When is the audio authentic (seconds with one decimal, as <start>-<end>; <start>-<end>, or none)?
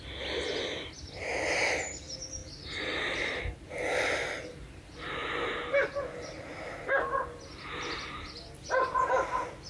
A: 2.4-3.7; 5.2-6.0